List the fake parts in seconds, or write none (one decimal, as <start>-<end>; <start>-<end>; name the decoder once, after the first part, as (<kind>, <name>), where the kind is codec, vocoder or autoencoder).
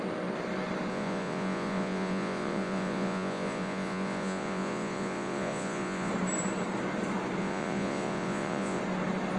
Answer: 0.9-6.1 (vocoder, Vocos); 7.4-8.8